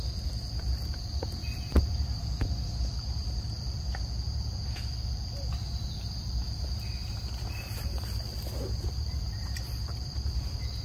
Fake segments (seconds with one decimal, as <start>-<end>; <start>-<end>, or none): 0.0-3.9; 4.6-7.0; 8.8-10.8